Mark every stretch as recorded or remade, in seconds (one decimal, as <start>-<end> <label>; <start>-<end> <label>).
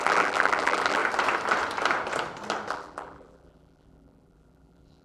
0.0-1.0 remade; 1.0-2.7 recorded; 2.7-5.0 remade